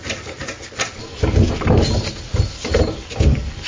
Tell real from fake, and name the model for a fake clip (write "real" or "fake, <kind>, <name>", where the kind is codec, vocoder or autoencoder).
real